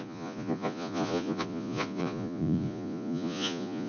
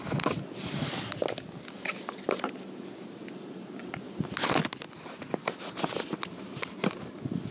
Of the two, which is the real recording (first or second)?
second